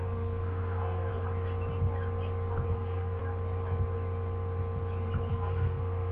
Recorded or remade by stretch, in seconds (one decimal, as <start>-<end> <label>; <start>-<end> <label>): 0.0-1.1 remade; 1.1-2.7 recorded; 2.7-3.2 remade; 3.2-5.3 recorded; 5.3-6.1 remade